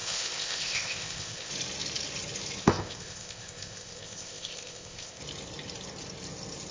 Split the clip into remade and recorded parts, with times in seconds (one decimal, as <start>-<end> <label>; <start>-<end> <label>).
0.0-1.5 remade; 1.5-2.6 recorded; 2.6-5.2 remade; 5.2-6.7 recorded

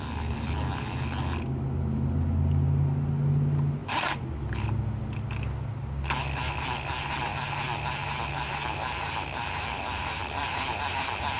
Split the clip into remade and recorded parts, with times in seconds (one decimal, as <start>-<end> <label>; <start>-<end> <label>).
0.0-11.4 recorded

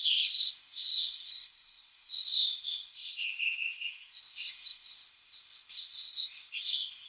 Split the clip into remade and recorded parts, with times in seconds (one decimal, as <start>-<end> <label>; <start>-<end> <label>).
0.0-7.1 remade

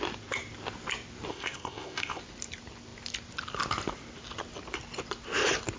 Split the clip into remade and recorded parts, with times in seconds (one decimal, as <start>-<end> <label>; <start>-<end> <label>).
0.0-1.3 recorded; 1.3-2.2 remade; 2.2-5.8 recorded

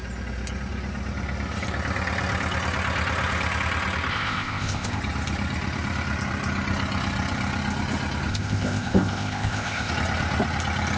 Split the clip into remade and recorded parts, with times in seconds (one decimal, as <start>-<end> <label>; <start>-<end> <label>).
0.0-4.1 recorded; 4.1-5.0 remade; 5.0-8.3 recorded; 8.3-9.9 remade; 9.9-11.0 recorded

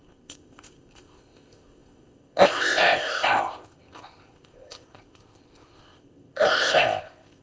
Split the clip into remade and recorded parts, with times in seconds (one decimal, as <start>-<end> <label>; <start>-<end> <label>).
0.0-7.4 remade